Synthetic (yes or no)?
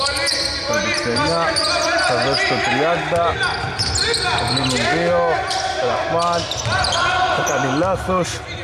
no